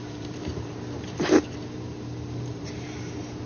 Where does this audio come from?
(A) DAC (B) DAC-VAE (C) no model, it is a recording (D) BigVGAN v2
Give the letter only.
D